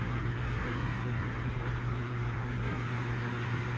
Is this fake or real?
fake